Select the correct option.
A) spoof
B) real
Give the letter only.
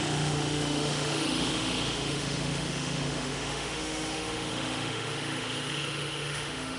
A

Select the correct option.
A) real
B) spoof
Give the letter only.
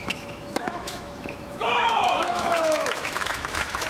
B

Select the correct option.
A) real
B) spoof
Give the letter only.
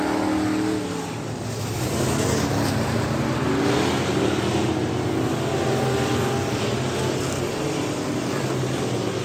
A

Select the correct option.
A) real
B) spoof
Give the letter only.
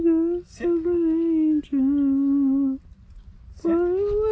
A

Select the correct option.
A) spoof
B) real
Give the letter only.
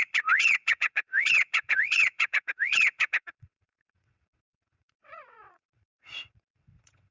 A